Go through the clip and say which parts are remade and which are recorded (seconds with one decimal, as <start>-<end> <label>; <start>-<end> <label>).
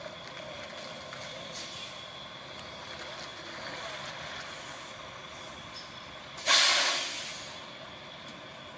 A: 0.0-8.8 recorded